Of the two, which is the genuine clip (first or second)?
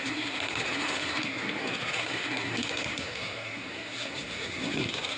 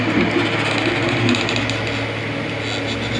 second